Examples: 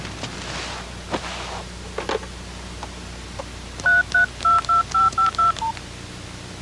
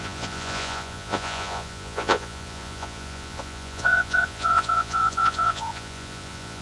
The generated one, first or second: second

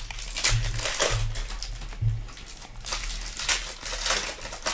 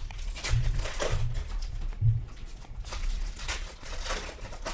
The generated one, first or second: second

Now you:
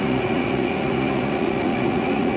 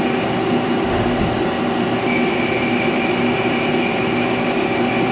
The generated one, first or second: first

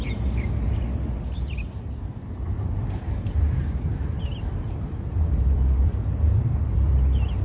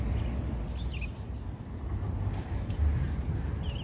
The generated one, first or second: first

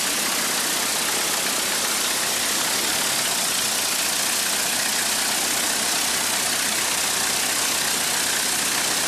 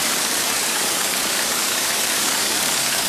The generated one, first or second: second